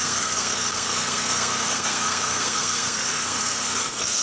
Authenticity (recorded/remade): remade